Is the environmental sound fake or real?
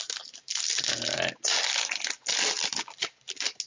real